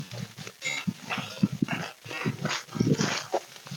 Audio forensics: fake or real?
real